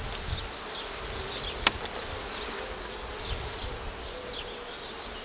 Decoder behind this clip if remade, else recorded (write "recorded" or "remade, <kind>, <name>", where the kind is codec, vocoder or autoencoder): recorded